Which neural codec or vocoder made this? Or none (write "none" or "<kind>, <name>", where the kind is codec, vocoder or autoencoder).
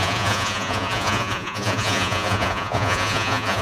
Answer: vocoder, Vocos